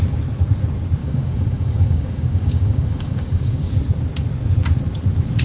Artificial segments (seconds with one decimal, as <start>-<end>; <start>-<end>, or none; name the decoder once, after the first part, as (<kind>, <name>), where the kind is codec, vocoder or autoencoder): 1.0-3.7 (codec, DAC)